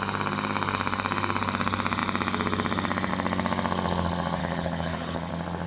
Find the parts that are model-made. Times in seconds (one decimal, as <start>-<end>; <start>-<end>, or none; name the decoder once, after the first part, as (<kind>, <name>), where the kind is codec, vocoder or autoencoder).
4.4-5.3 (codec, HILCodec)